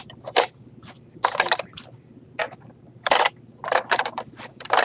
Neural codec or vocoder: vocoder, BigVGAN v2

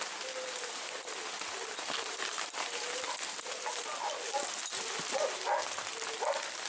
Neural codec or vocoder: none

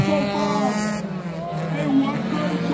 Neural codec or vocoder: none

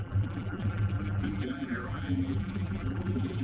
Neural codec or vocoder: vocoder, BigVGAN v2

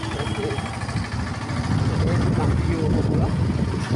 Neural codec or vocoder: none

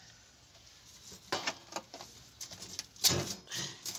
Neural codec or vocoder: none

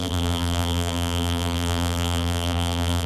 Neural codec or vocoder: vocoder, BigVGAN v2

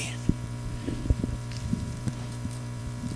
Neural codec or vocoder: vocoder, BigVGAN v2